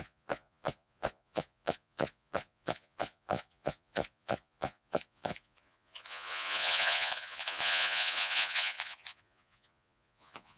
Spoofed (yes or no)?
yes